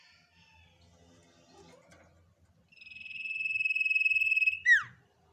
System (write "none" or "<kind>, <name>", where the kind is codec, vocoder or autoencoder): none